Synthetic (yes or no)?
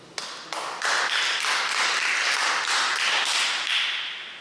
no